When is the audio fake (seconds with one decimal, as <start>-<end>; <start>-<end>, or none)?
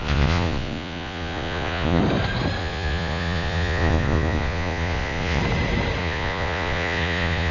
0.0-2.0; 2.6-5.4; 6.0-7.5